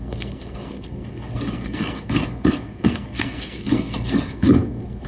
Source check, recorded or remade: remade